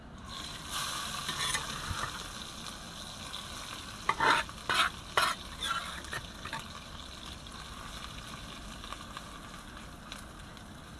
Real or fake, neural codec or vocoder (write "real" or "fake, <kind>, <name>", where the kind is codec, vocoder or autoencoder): real